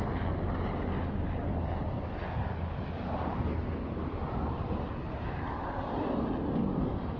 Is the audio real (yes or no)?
yes